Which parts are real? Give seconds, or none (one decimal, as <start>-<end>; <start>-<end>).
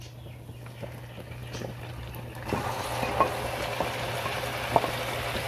0.0-5.5